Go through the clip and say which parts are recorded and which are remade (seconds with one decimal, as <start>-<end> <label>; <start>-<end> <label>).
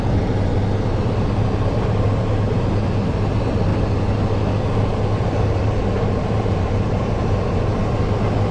0.0-0.5 remade; 0.5-1.1 recorded; 1.1-3.7 remade; 3.7-6.1 recorded; 6.1-7.8 remade; 7.8-8.5 recorded